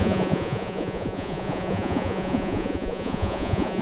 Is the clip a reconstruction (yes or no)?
yes